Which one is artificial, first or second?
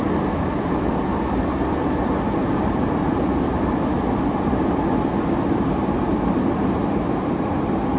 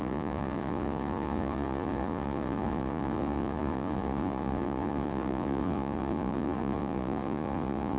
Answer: second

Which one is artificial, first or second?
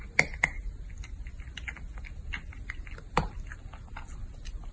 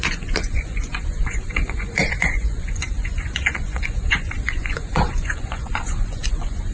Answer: second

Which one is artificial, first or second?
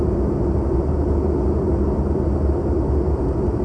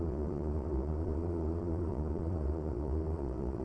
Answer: second